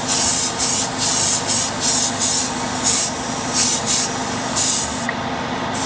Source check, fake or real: real